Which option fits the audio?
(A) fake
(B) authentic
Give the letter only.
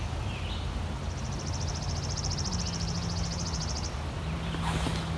B